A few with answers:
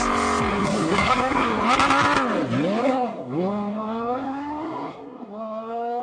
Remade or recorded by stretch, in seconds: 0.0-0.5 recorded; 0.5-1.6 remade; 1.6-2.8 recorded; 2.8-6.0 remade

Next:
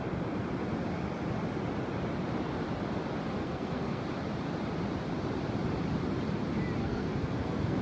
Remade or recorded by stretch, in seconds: 0.0-3.4 recorded; 3.4-4.0 remade; 4.0-6.8 recorded; 6.8-7.8 remade

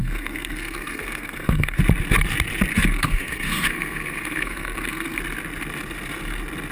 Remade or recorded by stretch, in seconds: 0.0-1.8 remade; 1.8-2.7 recorded; 2.7-5.2 remade; 5.2-6.7 recorded